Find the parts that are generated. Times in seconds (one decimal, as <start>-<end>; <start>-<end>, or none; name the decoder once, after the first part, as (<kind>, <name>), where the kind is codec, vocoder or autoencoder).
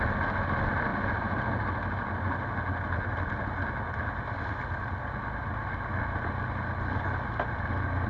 none